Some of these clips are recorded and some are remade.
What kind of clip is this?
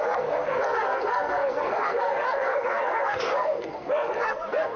remade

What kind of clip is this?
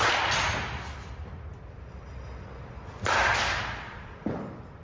recorded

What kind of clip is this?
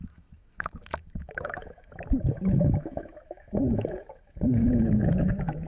remade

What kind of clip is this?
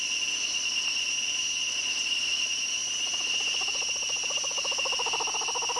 recorded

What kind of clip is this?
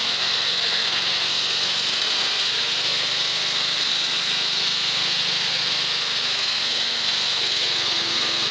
remade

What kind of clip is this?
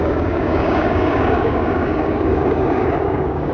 remade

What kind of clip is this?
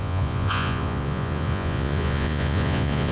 remade